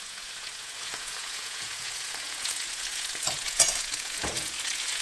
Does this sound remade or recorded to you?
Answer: remade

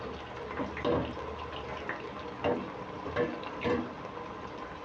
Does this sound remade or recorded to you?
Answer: remade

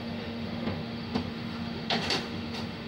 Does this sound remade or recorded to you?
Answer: remade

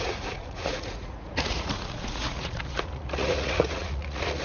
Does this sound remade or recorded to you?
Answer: remade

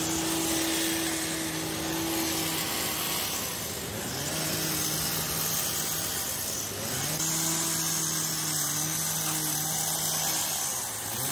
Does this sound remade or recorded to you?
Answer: recorded